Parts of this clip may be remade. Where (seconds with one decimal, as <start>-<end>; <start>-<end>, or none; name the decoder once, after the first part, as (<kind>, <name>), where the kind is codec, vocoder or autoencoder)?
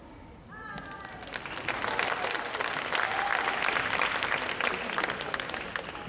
none